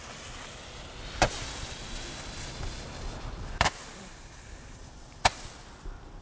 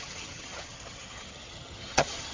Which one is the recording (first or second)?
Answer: first